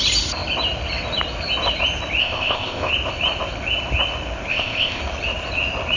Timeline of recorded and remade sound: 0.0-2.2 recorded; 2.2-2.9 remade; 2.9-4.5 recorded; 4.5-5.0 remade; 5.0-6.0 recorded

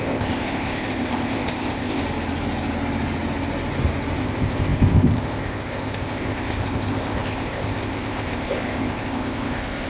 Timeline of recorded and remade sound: 0.0-2.0 remade; 2.0-4.2 recorded; 4.2-9.9 remade

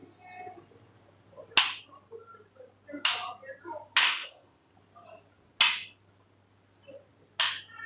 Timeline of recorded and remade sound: 0.0-4.0 recorded; 4.0-4.7 remade; 4.7-7.9 recorded